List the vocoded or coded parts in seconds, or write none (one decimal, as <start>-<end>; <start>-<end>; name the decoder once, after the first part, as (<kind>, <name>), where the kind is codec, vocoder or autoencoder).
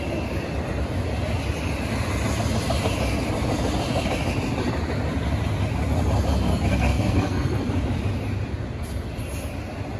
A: 6.5-7.7 (codec, SNAC)